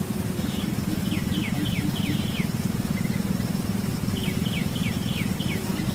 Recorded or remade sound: recorded